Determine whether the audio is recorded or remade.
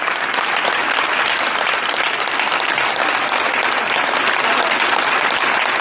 recorded